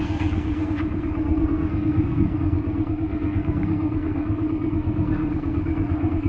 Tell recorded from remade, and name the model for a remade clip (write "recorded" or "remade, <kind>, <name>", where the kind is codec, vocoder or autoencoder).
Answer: remade, codec, SNAC